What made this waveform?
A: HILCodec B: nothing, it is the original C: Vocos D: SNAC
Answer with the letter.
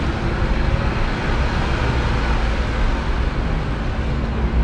B